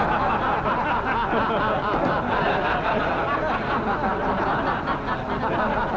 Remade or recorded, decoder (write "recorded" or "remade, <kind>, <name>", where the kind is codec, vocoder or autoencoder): recorded